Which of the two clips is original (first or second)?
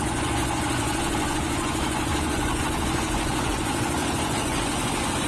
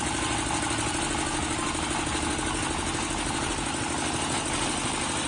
second